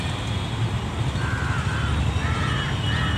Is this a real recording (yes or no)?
yes